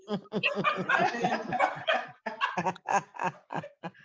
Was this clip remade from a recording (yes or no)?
yes